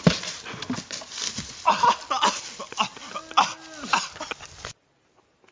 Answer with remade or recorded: recorded